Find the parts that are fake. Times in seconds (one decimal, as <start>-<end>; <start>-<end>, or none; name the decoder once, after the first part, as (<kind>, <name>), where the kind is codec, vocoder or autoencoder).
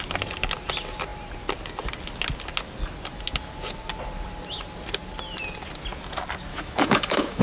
6.5-7.4 (autoencoder, DAC-VAE)